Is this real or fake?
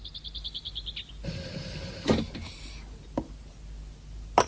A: real